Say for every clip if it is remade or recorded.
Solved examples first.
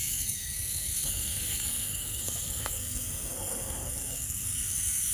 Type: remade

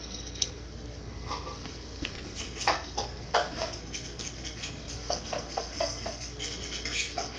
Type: remade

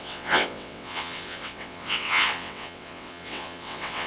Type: remade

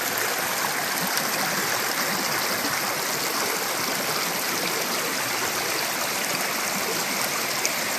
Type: recorded